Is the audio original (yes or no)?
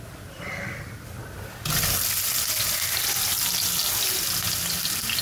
yes